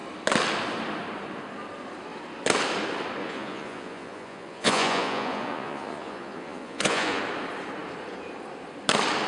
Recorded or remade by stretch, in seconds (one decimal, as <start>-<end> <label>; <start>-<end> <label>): 0.0-3.2 recorded; 3.2-7.2 remade; 7.2-9.3 recorded